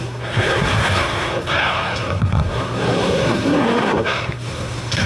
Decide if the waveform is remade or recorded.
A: remade